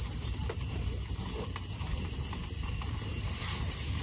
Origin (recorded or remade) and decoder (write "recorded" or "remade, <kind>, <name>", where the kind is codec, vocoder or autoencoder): remade, vocoder, BigVGAN v2